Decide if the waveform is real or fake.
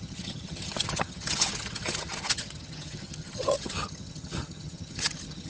fake